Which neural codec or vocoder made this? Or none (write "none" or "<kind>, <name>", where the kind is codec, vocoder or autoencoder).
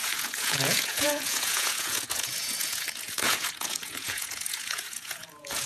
vocoder, Vocos